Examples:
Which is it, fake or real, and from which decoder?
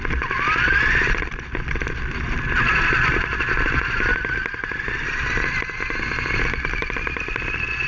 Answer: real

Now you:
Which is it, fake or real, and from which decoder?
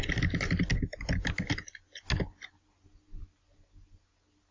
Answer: real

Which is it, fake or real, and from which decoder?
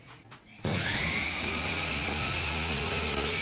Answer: fake, vocoder, Vocos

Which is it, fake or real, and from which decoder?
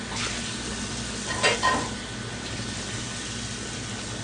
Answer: real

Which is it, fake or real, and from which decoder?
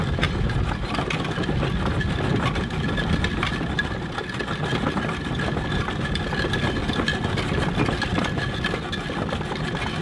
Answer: real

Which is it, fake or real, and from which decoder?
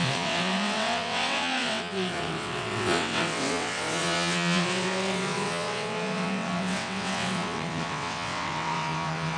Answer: fake, vocoder, WaveNeXt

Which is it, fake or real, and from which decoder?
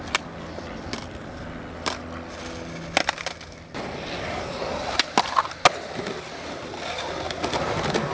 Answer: real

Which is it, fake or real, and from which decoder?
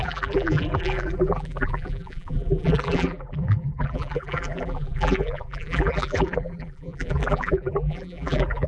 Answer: fake, vocoder, BigVGAN v2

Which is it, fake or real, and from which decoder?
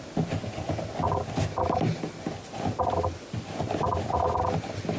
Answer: real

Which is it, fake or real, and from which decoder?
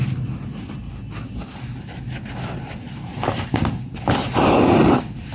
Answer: real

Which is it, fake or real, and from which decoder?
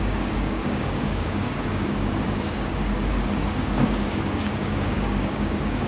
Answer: fake, codec, DAC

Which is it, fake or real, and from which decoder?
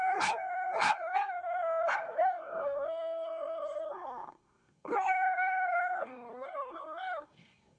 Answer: fake, codec, SNAC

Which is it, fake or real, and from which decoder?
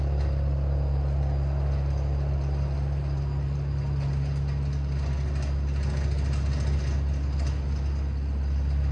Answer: real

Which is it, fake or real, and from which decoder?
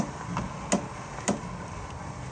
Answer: real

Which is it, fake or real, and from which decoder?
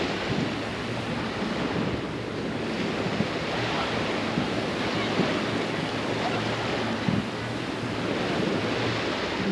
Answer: real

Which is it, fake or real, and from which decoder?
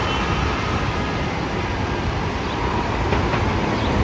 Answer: real